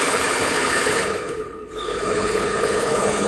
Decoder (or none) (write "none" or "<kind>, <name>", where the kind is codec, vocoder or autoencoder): codec, HILCodec